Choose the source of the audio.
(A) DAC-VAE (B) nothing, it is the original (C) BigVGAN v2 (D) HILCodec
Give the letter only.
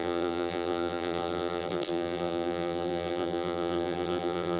C